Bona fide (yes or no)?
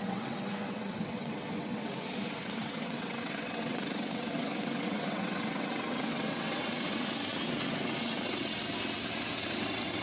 no